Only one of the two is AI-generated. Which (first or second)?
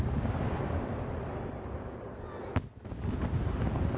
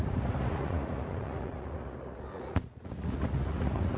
second